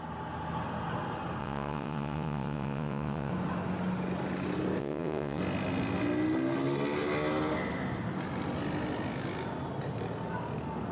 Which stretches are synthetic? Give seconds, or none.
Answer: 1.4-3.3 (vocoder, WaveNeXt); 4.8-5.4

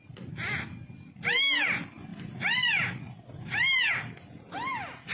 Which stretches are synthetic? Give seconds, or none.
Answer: 2.1-3.9 (vocoder, BigVGAN v2)

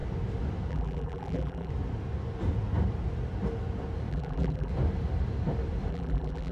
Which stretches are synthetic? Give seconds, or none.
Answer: 0.7-1.7 (vocoder, BigVGAN v2); 4.1-4.7; 5.9-6.5

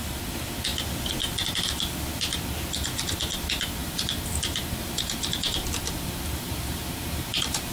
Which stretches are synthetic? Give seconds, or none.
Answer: 3.8-7.7 (vocoder, BigVGAN v2)

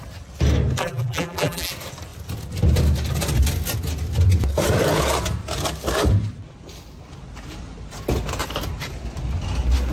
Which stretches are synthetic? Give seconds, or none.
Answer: 0.8-1.7 (vocoder, BigVGAN v2)

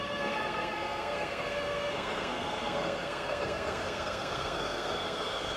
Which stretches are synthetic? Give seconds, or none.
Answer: 0.0-5.6 (codec, SNAC)